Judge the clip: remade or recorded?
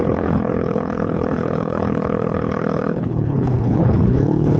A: remade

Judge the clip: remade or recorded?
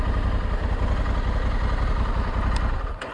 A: recorded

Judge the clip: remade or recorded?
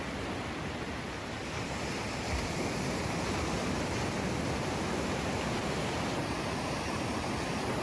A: recorded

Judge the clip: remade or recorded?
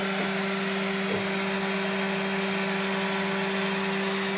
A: recorded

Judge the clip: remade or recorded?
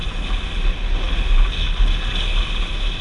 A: recorded